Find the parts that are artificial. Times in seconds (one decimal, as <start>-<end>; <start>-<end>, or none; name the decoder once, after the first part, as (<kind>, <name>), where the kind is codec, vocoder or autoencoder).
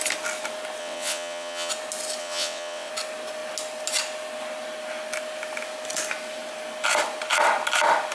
0.8-1.7 (vocoder, WaveNeXt); 2.2-2.9